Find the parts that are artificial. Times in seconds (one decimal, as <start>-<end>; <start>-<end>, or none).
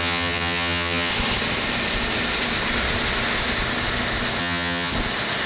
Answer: 0.0-1.1; 4.4-4.9